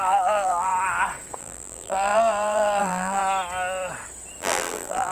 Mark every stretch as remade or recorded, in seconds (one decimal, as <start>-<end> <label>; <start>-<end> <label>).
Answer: 0.0-0.7 remade; 0.7-1.4 recorded; 1.4-3.2 remade; 3.2-4.4 recorded; 4.4-5.1 remade